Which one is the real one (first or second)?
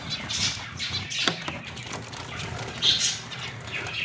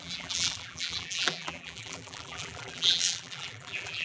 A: first